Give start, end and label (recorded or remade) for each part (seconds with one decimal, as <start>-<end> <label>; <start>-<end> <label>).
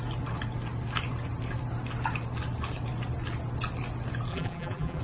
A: 0.0-4.3 recorded; 4.3-5.0 remade